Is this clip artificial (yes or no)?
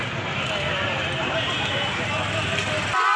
no